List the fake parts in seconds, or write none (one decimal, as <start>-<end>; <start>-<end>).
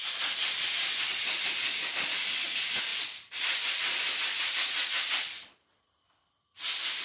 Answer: 0.4-1.5; 2.9-5.8